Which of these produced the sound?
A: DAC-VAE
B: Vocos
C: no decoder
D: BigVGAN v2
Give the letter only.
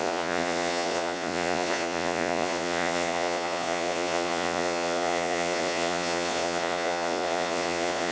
B